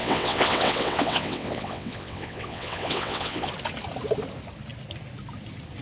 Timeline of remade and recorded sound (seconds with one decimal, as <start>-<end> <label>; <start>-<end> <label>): 0.0-3.5 remade; 3.5-5.8 recorded